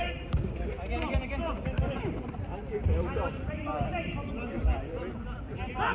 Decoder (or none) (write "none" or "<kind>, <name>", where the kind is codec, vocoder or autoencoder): none